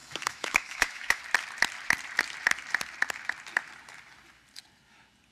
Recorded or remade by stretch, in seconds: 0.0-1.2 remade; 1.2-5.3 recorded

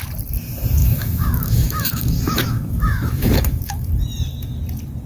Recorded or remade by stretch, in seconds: 0.0-0.8 recorded; 0.8-3.9 remade; 3.9-5.1 recorded